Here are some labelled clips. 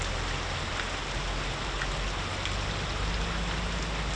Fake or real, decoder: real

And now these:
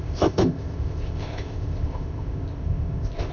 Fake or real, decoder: fake, codec, ZipCodec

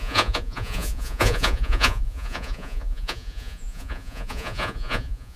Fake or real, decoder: fake, vocoder, Vocos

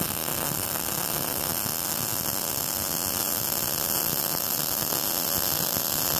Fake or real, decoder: real